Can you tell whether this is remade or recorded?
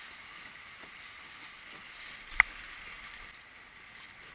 recorded